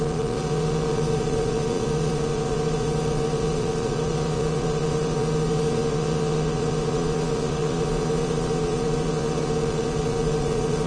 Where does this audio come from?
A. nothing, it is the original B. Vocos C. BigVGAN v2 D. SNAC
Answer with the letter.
B